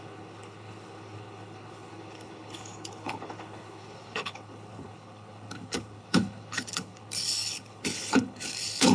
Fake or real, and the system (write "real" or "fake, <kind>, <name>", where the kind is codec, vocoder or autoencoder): fake, codec, HILCodec